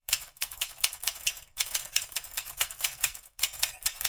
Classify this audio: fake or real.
fake